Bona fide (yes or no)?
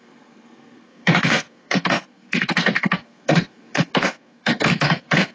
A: no